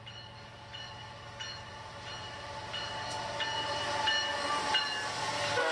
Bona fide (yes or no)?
yes